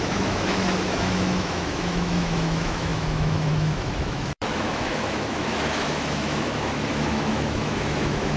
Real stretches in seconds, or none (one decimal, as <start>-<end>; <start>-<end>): none